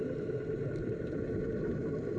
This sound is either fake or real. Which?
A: real